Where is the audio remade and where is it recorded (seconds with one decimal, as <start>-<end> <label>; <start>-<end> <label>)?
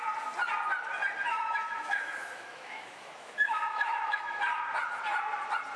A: 0.0-1.3 recorded; 1.3-4.4 remade; 4.4-5.8 recorded